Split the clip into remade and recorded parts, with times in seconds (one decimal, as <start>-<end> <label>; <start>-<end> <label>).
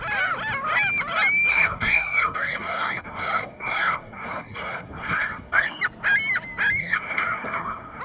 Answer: 0.0-1.5 recorded; 1.5-5.8 remade; 5.8-6.8 recorded; 6.8-8.0 remade